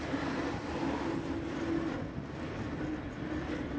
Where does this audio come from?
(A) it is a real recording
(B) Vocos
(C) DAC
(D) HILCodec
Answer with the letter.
A